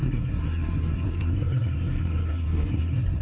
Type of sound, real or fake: fake